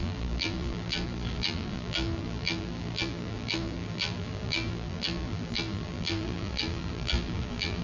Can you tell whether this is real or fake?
fake